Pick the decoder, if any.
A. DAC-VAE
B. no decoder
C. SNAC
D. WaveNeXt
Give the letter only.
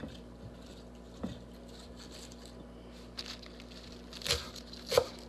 B